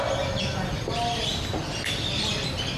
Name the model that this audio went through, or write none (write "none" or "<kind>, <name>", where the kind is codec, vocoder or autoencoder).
none